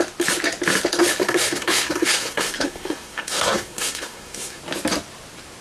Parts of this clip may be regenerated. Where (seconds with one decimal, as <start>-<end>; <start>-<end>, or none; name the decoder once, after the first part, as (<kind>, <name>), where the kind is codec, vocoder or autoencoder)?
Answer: 1.2-4.6 (codec, SNAC)